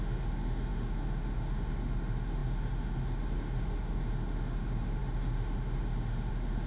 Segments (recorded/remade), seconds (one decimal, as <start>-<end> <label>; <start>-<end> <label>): 0.0-6.7 remade